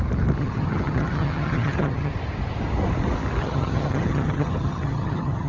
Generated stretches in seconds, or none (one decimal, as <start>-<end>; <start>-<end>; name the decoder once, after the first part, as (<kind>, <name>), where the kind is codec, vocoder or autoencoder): 0.4-2.1 (vocoder, HiFi-GAN); 3.4-5.5